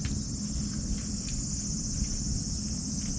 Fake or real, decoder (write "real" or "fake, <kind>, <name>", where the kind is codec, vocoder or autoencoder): real